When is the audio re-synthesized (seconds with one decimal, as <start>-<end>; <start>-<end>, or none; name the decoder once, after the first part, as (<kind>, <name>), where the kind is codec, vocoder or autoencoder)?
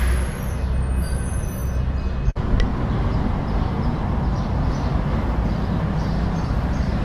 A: 2.7-7.0 (vocoder, BigVGAN v2)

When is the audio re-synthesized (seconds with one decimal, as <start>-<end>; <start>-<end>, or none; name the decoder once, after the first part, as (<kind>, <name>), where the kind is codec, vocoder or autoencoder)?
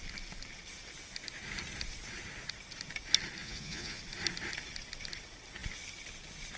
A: 3.4-4.0 (vocoder, Vocos)